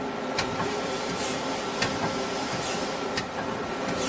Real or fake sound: fake